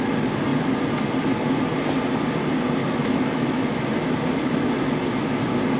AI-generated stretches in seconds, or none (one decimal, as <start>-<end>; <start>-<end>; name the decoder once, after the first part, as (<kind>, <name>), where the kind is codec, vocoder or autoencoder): 2.8-3.8 (autoencoder, DAC-VAE)